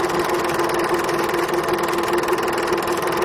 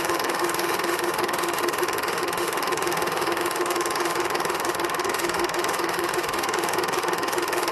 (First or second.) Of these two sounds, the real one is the first